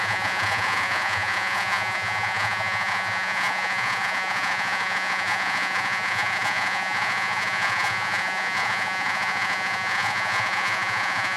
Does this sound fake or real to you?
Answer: fake